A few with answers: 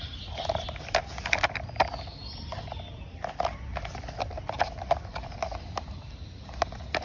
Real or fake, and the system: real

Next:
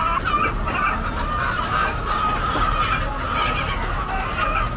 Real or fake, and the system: real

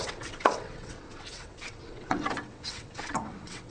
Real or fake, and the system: fake, vocoder, WaveNeXt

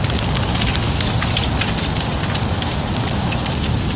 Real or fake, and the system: real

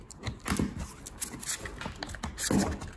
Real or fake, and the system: real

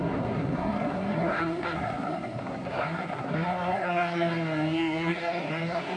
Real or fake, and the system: fake, codec, SNAC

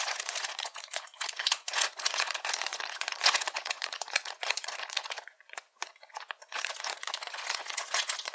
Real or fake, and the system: fake, vocoder, Vocos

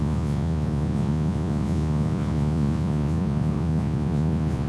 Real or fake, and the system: fake, vocoder, Vocos